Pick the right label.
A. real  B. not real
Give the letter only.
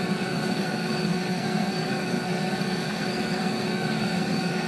B